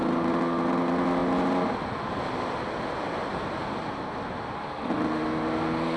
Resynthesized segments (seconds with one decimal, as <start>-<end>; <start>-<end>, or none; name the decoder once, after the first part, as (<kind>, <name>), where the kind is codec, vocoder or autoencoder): none